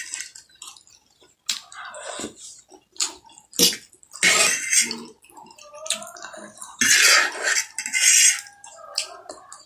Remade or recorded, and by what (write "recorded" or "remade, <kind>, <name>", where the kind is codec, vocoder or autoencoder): recorded